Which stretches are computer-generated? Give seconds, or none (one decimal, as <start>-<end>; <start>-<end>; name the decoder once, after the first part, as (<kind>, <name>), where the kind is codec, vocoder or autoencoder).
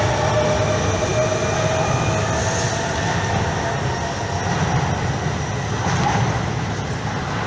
none